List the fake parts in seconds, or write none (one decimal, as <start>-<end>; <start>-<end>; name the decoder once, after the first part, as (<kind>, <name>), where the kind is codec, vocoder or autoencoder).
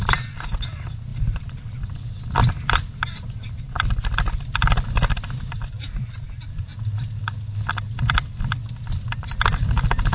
1.1-1.9 (vocoder, BigVGAN v2)